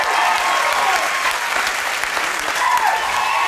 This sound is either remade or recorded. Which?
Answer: recorded